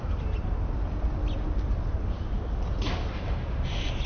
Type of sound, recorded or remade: recorded